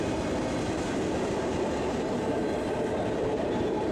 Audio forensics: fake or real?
fake